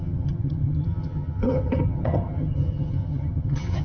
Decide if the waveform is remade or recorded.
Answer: remade